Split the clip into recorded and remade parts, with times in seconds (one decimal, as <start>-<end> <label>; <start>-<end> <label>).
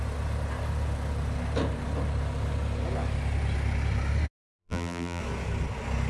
0.0-4.6 recorded; 4.6-5.2 remade; 5.2-6.1 recorded